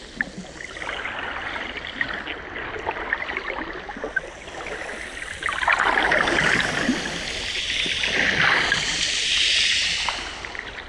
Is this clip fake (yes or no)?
no